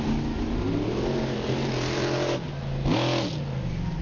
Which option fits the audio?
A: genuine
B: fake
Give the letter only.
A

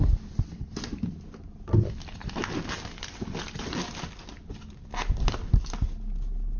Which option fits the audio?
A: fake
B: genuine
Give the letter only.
B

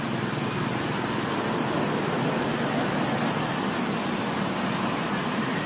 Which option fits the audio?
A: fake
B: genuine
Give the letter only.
B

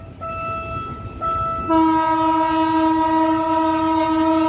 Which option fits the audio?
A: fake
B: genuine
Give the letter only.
B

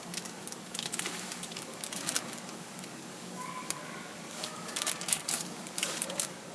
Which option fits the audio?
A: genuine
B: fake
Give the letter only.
B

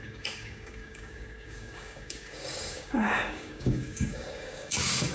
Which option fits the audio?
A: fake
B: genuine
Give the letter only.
A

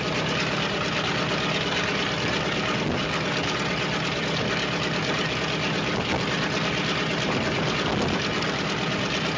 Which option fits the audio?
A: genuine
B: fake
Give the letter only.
A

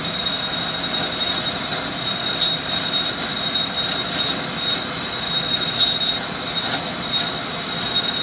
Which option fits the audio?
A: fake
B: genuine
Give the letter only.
B